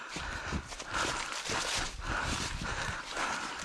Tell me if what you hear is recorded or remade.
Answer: remade